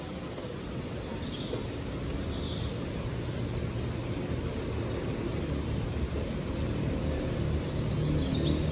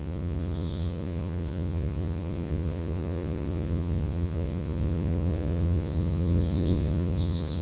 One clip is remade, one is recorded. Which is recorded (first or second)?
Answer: first